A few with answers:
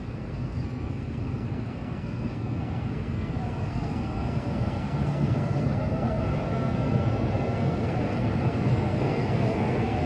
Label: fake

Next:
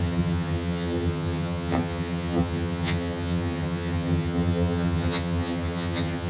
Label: fake